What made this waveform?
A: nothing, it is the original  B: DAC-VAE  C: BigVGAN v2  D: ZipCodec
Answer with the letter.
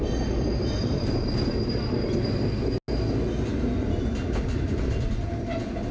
A